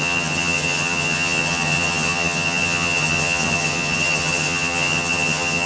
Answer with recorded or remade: remade